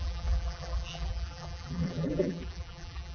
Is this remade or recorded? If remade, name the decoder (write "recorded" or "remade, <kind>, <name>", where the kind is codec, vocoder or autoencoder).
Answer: remade, vocoder, BigVGAN v2